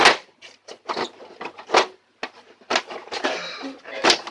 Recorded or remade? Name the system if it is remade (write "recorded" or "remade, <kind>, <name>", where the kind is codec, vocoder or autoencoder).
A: recorded